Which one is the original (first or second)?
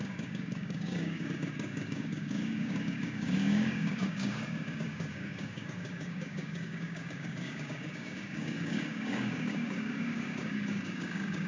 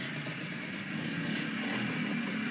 second